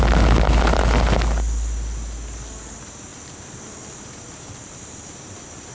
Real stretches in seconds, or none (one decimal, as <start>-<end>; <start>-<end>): 0.0-5.7